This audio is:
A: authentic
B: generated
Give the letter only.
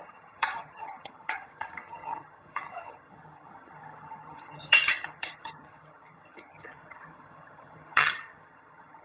B